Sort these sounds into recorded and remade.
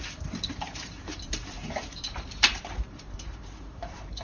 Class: remade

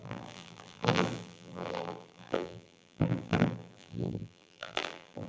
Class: remade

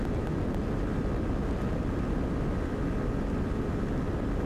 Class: recorded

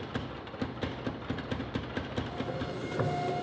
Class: recorded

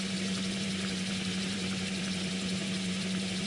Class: remade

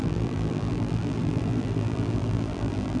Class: remade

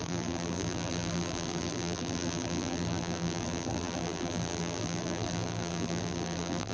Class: remade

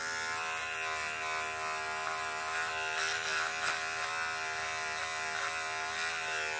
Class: recorded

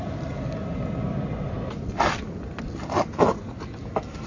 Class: recorded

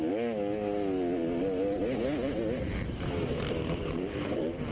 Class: recorded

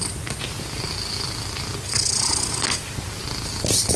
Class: recorded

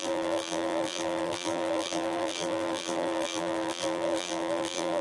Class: remade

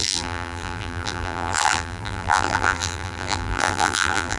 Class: remade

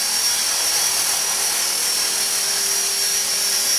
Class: recorded